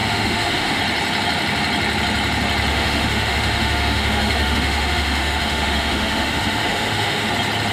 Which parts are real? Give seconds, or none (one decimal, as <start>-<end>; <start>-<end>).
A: 0.8-2.7; 7.3-7.7